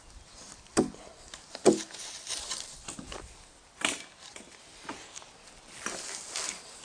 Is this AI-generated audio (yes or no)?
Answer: no